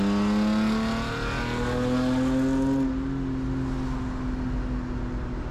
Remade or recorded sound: recorded